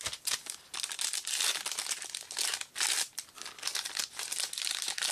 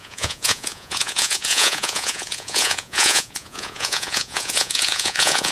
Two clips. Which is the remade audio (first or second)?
second